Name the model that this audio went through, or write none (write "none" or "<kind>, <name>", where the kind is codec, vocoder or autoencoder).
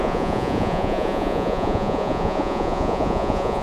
vocoder, Vocos